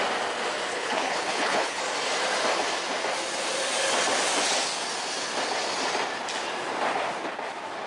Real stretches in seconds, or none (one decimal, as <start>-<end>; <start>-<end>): 0.0-0.7; 1.8-7.9